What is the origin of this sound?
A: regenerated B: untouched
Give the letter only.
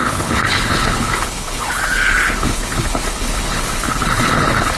A